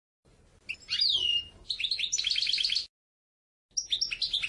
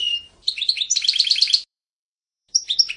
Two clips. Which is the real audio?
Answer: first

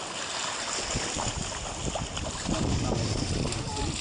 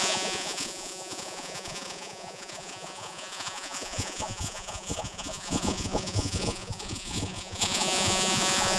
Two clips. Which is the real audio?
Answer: first